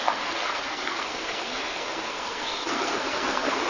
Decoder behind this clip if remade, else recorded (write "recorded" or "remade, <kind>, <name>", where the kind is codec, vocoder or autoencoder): remade, codec, SNAC